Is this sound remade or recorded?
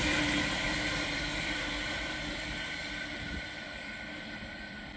remade